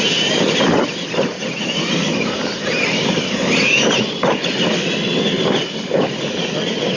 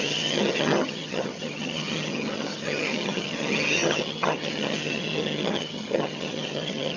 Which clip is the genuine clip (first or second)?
first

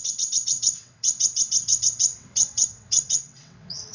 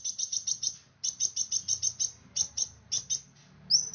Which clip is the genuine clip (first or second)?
second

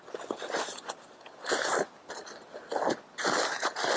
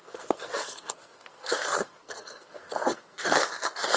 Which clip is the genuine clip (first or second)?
first